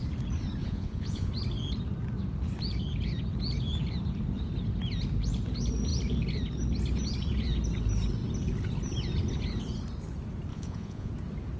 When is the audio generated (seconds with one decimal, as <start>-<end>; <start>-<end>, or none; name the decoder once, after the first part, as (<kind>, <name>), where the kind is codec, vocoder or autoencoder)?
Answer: 0.6-1.3 (vocoder, Vocos); 10.5-11.1